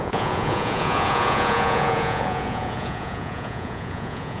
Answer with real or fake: fake